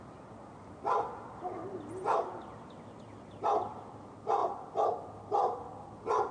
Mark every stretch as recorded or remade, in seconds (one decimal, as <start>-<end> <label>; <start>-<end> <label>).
0.0-4.4 recorded; 4.4-5.0 remade; 5.0-6.3 recorded